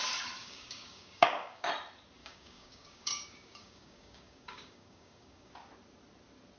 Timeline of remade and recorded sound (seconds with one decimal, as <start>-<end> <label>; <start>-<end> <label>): 0.0-0.4 recorded; 0.4-1.7 remade; 1.7-2.2 recorded; 2.2-5.5 remade; 5.5-6.6 recorded